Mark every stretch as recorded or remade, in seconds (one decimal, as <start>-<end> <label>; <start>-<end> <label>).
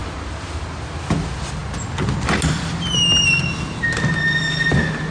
0.0-5.1 recorded